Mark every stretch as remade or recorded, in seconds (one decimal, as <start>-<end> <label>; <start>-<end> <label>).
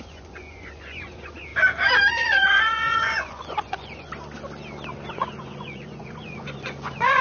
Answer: 0.0-1.5 remade; 1.5-2.1 recorded; 2.1-4.1 remade; 4.1-5.1 recorded; 5.1-7.2 remade